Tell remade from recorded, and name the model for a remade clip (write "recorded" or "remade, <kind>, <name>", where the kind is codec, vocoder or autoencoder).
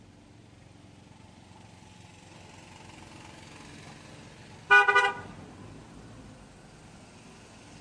recorded